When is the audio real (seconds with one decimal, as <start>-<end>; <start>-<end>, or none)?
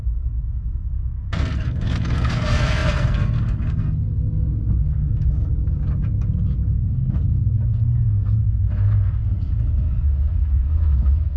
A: 5.5-6.7